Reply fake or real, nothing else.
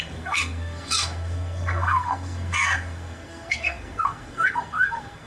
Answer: fake